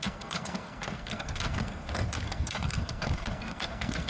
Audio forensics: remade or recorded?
remade